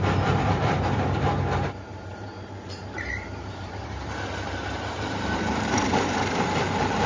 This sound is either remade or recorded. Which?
remade